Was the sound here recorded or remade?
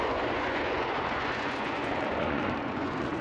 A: remade